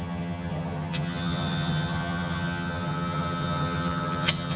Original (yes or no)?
no